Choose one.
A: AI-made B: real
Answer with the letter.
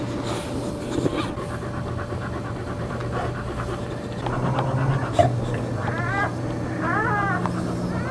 B